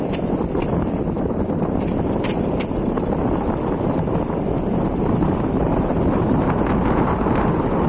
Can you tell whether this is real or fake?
real